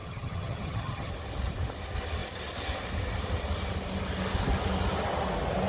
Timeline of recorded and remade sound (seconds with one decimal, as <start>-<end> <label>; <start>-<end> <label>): 0.0-1.1 remade; 1.1-5.7 recorded